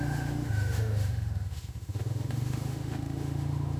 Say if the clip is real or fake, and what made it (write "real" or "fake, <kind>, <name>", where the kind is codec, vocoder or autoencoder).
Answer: fake, autoencoder, DAC-VAE